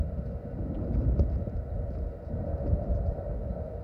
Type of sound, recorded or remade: recorded